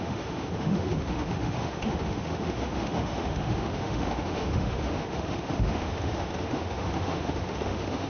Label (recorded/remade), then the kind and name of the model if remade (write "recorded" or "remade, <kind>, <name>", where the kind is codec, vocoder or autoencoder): remade, autoencoder, DAC-VAE